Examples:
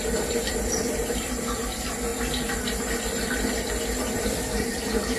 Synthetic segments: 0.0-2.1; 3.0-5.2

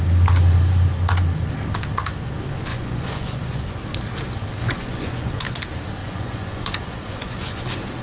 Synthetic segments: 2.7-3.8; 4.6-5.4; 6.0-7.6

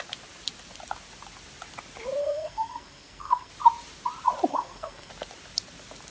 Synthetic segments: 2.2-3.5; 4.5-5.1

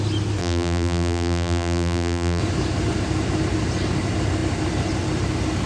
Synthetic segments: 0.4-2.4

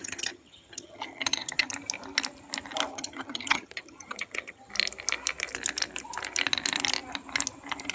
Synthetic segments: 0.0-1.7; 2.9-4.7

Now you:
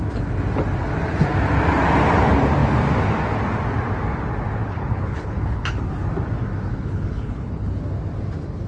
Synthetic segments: 4.6-5.9; 6.7-7.8